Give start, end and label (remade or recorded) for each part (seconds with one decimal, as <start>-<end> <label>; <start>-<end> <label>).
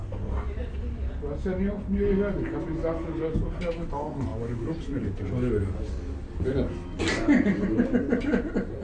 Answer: 0.0-8.8 recorded